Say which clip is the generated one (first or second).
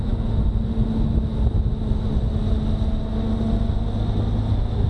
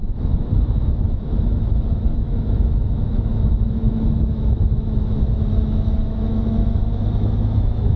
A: second